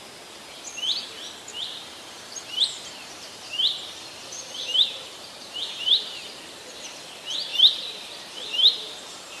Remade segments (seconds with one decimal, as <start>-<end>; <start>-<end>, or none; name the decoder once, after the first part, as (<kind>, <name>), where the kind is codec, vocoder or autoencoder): 1.5-6.6 (vocoder, BigVGAN v2); 7.5-9.4